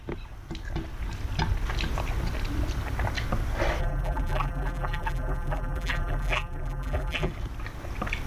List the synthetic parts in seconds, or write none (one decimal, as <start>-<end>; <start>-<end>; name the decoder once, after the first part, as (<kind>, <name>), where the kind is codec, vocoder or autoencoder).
3.8-7.3 (vocoder, BigVGAN v2)